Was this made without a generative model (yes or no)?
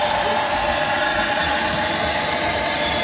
yes